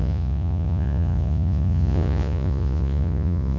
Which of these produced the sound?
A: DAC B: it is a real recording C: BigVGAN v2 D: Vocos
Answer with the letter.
D